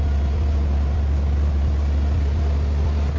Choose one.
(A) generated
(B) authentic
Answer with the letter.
B